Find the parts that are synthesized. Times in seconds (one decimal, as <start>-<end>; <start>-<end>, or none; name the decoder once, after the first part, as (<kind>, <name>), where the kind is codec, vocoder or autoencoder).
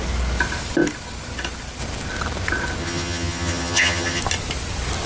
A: 2.8-4.2 (vocoder, HiFi-GAN)